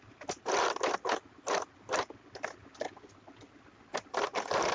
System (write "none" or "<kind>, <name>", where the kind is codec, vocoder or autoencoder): none